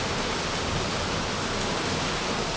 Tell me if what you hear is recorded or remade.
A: recorded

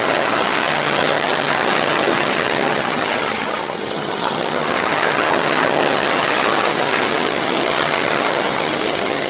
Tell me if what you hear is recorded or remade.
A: remade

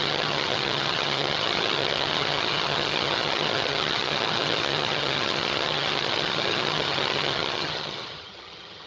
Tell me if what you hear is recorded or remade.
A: remade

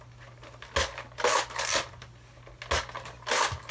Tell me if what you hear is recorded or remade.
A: recorded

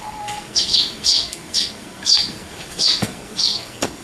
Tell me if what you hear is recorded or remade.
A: remade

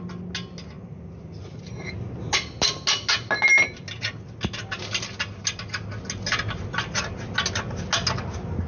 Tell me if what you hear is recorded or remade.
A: recorded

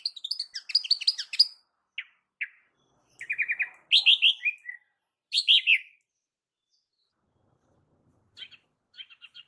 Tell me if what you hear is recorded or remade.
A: recorded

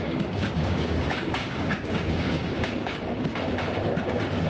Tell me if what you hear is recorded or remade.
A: remade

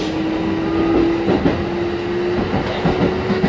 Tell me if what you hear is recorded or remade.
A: recorded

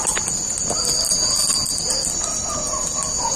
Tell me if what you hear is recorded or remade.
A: recorded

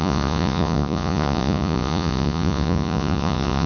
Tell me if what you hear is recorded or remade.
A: remade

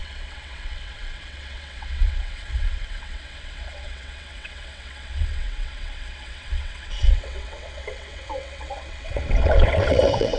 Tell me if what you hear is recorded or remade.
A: remade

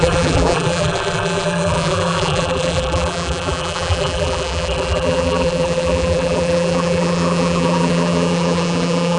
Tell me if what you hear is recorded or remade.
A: remade